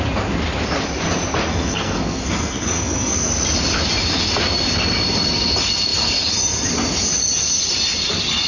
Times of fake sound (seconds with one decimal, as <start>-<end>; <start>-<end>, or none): 1.5-3.3